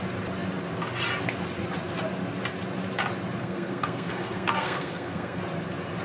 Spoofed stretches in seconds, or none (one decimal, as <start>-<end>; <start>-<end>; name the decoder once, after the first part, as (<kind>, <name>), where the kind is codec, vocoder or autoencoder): 3.4-5.4 (codec, SNAC)